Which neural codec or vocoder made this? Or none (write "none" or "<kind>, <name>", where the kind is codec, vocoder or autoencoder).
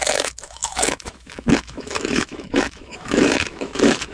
autoencoder, DAC-VAE